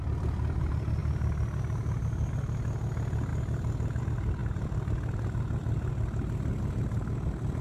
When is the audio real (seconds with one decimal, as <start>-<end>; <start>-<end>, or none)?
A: 0.0-7.6